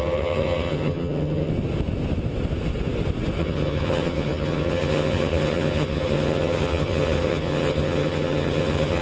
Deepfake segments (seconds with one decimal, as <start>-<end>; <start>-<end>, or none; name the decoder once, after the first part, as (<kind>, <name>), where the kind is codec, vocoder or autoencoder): 0.0-1.5 (vocoder, HiFi-GAN); 3.4-9.0